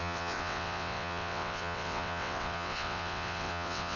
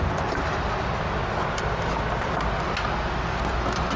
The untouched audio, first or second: second